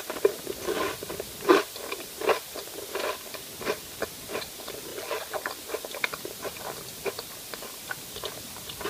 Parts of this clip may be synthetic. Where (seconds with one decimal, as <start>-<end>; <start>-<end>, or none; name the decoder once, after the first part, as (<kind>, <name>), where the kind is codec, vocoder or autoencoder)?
none